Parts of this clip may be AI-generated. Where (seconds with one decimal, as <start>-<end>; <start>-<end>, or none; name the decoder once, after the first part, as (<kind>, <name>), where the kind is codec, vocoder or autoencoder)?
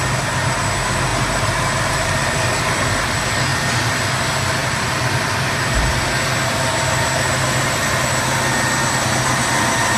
1.1-2.5 (vocoder, BigVGAN v2); 3.5-4.0; 4.6-5.9